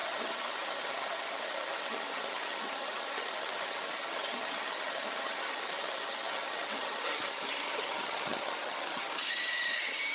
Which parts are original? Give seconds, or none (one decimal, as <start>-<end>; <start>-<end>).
none